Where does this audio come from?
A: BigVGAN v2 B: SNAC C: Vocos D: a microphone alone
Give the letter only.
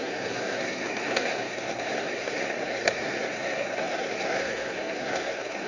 B